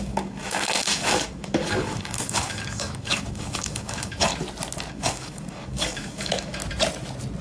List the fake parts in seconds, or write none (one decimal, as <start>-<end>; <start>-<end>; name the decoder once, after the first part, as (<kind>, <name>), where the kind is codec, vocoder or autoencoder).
0.0-4.3 (codec, DAC); 4.9-6.6